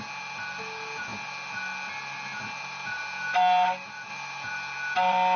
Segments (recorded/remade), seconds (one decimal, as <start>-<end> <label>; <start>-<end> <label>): 0.0-5.4 recorded